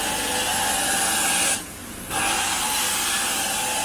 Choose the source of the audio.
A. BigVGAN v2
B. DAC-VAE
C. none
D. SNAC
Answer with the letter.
C